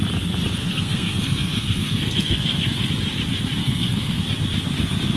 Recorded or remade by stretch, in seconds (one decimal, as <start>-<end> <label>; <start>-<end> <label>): 0.0-0.6 recorded; 0.6-2.9 remade; 2.9-3.6 recorded; 3.6-4.2 remade; 4.2-5.2 recorded

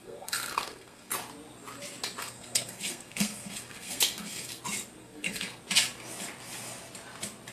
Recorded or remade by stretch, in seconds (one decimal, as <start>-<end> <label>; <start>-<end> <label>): 0.0-1.1 remade; 1.1-2.2 recorded; 2.2-4.6 remade; 4.6-5.0 recorded; 5.0-5.6 remade; 5.6-7.5 recorded